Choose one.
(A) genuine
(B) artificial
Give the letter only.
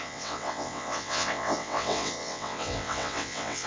B